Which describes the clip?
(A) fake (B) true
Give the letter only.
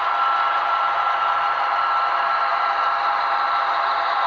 B